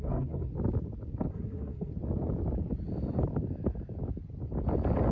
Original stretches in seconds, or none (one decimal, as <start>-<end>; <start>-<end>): 0.5-1.3; 1.9-5.1